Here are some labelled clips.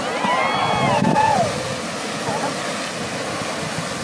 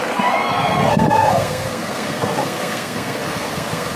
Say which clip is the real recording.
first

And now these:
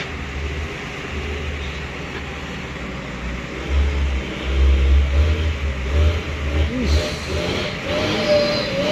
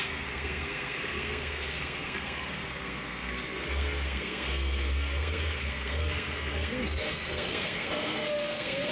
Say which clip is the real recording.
first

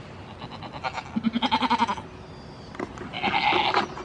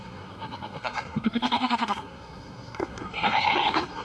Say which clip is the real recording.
first